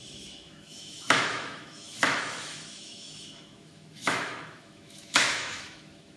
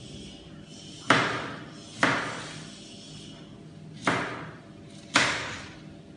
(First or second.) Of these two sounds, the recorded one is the second